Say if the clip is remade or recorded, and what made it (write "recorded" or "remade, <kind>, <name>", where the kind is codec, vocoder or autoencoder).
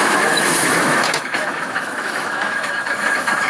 remade, autoencoder, DAC-VAE